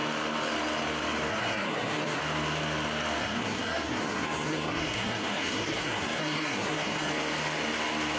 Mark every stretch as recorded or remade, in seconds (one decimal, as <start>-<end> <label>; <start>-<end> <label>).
0.0-1.3 recorded; 1.3-2.2 remade; 2.2-3.2 recorded; 3.2-7.1 remade; 7.1-8.2 recorded